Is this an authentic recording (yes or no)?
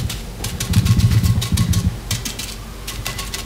yes